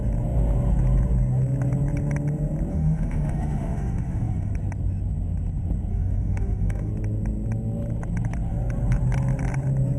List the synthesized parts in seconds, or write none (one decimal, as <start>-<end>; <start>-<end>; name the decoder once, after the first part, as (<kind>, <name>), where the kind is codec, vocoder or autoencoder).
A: 2.7-4.5 (autoencoder, DAC-VAE); 5.9-6.9